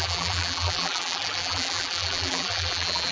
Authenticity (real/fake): fake